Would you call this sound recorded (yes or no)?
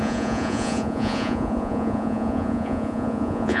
no